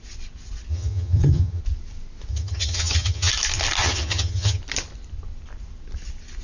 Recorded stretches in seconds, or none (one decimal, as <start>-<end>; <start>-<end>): 0.0-0.7; 1.6-2.3; 3.3-3.8; 4.6-6.4